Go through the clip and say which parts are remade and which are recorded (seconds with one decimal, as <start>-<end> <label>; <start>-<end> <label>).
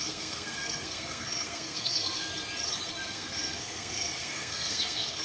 0.0-2.3 remade; 2.3-2.9 recorded; 2.9-5.2 remade